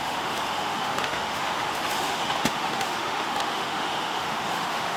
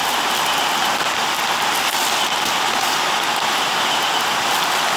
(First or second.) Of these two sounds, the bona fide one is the second